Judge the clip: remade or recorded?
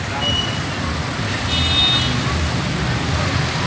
recorded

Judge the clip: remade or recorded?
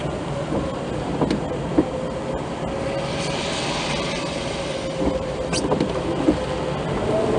recorded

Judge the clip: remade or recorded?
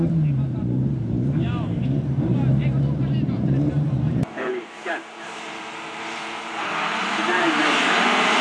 remade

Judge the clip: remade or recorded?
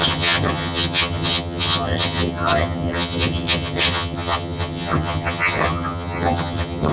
remade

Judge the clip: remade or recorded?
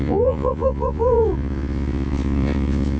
remade